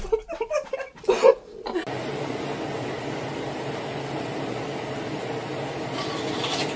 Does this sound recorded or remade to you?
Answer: recorded